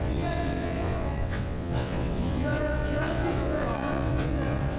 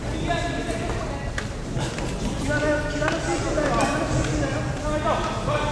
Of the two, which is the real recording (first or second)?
second